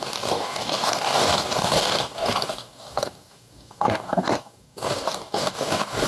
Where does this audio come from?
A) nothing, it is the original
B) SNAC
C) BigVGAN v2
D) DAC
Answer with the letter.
D